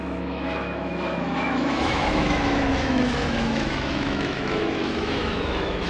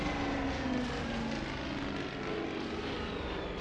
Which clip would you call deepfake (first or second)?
first